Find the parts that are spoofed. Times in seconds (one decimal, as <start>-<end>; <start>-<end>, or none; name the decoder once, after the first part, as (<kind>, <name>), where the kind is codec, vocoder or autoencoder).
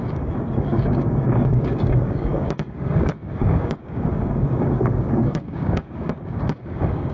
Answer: 0.0-7.1 (codec, DAC)